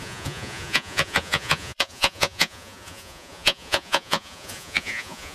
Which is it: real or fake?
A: fake